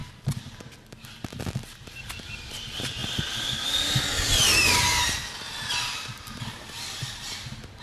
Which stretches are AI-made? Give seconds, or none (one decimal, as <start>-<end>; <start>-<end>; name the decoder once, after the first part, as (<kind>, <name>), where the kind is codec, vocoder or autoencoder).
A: none